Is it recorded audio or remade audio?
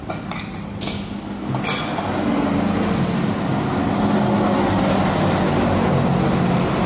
recorded